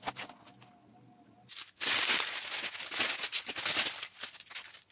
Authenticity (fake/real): real